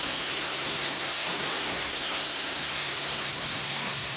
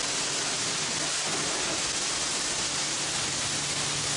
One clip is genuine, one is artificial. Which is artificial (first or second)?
first